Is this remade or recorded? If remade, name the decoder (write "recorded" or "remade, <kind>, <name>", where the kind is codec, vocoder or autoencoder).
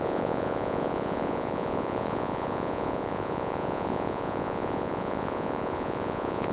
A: remade, vocoder, Vocos